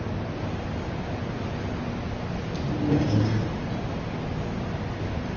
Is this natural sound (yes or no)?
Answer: yes